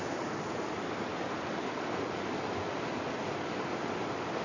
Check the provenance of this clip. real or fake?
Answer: real